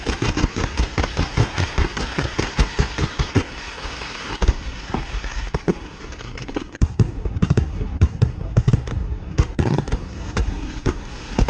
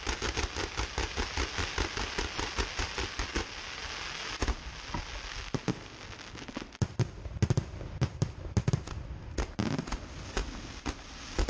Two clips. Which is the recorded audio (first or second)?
second